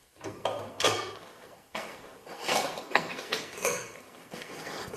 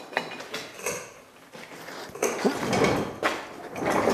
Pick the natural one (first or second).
second